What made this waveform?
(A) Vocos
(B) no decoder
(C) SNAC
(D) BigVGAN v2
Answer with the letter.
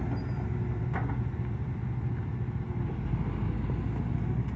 B